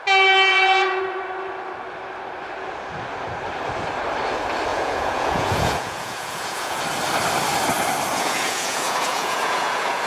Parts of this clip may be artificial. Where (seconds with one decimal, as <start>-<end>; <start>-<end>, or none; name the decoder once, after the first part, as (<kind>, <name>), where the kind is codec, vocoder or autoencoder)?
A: 0.5-1.0 (vocoder, Vocos); 4.7-6.8; 8.1-10.1